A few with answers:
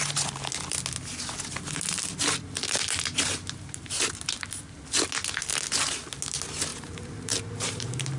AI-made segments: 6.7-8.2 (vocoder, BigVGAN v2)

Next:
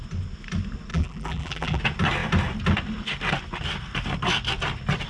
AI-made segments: 0.9-1.8 (vocoder, BigVGAN v2)

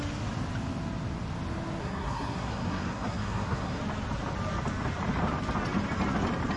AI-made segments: 1.8-3.8 (codec, SNAC)

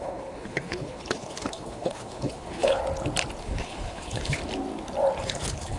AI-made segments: 0.0-2.8 (codec, HILCodec); 3.4-4.4; 5.2-5.8

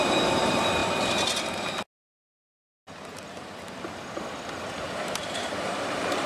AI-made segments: 0.0-0.8 (vocoder, BigVGAN v2); 4.6-6.3